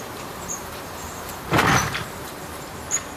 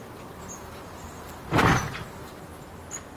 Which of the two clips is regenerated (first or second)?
first